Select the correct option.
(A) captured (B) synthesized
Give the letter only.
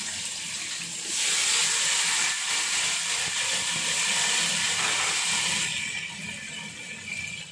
A